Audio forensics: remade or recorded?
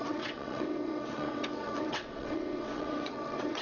remade